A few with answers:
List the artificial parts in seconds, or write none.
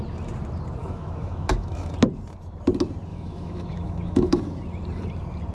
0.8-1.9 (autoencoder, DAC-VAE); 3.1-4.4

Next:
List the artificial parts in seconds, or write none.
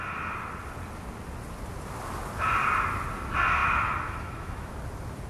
3.6-4.7 (autoencoder, DAC-VAE)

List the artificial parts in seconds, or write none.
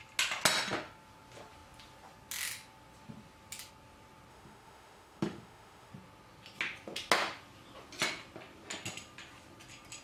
4.3-5.9 (autoencoder, DAC-VAE)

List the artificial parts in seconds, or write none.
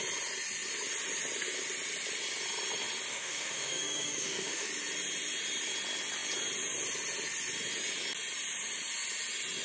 3.1-4.7 (autoencoder, DAC-VAE)